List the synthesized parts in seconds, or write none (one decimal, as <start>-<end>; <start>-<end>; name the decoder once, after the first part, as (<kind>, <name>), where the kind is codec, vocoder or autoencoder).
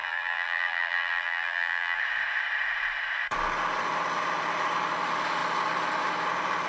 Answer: 0.0-2.0 (vocoder, BigVGAN v2)